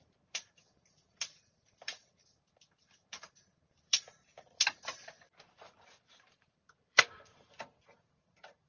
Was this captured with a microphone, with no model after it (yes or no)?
no